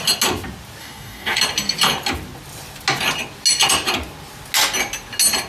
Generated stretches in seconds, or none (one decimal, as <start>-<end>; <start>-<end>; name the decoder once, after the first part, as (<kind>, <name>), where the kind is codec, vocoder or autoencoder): 0.8-1.4 (codec, DAC)